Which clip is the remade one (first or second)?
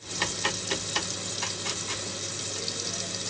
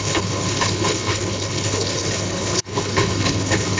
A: second